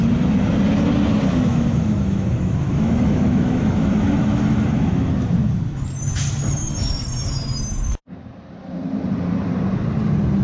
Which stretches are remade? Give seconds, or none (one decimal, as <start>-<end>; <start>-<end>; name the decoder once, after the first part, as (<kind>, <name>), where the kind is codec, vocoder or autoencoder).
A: 1.5-5.1 (autoencoder, DAC-VAE)